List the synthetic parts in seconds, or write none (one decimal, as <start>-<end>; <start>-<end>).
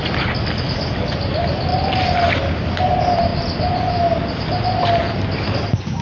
0.8-3.3